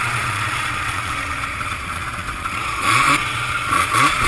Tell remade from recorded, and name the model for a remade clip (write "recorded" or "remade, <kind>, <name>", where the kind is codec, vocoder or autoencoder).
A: remade, vocoder, Vocos